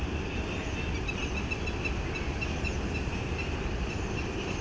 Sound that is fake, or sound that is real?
real